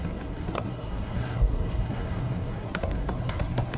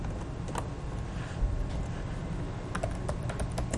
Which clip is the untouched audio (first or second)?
second